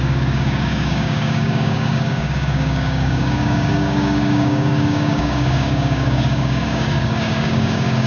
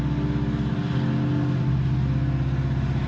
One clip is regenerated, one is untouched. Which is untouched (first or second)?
second